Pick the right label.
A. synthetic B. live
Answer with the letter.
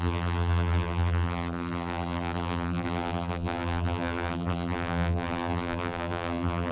A